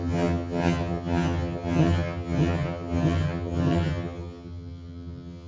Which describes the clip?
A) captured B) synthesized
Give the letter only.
B